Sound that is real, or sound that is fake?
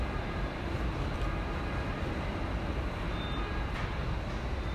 real